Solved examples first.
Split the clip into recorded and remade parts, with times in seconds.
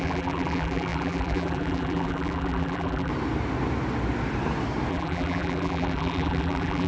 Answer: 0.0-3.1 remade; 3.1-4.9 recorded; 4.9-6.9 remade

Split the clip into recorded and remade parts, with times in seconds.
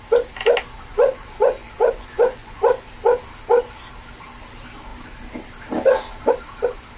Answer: 0.0-0.9 recorded; 0.9-2.6 remade; 2.6-7.0 recorded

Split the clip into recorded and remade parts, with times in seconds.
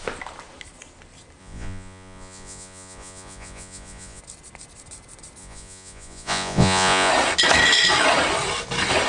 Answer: 0.0-1.4 recorded; 1.4-4.2 remade; 4.2-5.4 recorded; 5.4-7.1 remade; 7.1-9.1 recorded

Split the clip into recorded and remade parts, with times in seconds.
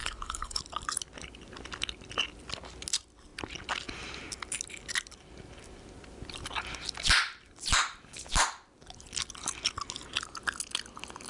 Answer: 0.0-0.6 remade; 0.6-11.3 recorded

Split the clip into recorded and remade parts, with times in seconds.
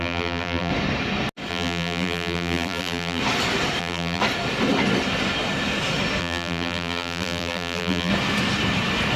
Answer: 0.0-0.7 remade; 0.7-1.5 recorded; 1.5-3.2 remade; 3.2-3.8 recorded; 3.8-4.2 remade; 4.2-6.2 recorded; 6.2-8.1 remade; 8.1-9.2 recorded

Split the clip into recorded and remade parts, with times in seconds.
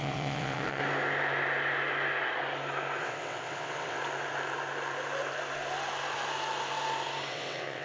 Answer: 0.0-0.8 remade; 0.8-3.0 recorded; 3.0-4.0 remade; 4.0-7.3 recorded; 7.3-7.8 remade